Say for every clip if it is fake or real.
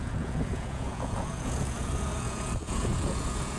fake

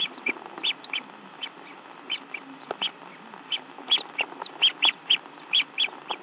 real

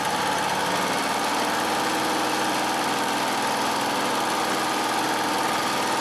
real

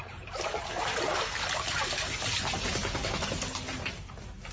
real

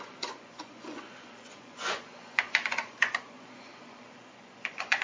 fake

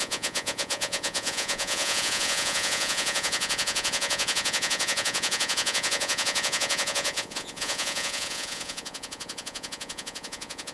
fake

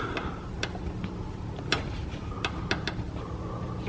real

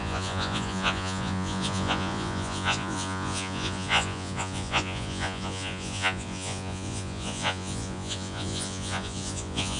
fake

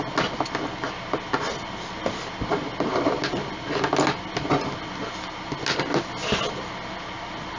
real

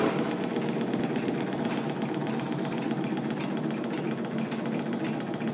real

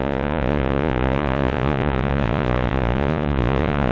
fake